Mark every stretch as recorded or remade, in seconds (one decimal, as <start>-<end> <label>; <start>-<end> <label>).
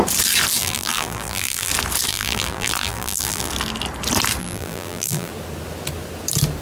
0.0-0.6 recorded; 0.6-1.7 remade; 1.7-2.1 recorded; 2.1-3.5 remade; 3.5-4.4 recorded; 4.4-5.3 remade; 5.3-6.6 recorded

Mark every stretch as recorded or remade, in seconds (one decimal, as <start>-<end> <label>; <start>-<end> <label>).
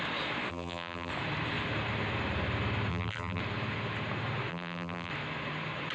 0.0-0.5 recorded; 0.5-1.1 remade; 1.1-2.9 recorded; 2.9-3.4 remade; 3.4-4.5 recorded; 4.5-5.1 remade; 5.1-5.9 recorded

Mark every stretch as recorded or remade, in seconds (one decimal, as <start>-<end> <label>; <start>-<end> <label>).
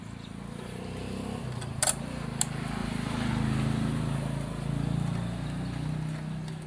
0.0-2.8 recorded; 2.8-3.3 remade; 3.3-6.7 recorded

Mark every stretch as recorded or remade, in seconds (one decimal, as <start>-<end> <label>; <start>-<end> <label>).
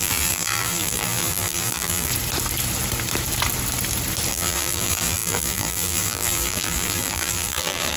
0.0-2.1 remade; 2.1-4.3 recorded; 4.3-8.0 remade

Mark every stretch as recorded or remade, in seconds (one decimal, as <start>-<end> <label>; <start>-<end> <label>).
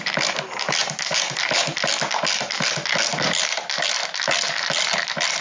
0.0-0.8 recorded; 0.8-1.8 remade; 1.8-5.4 recorded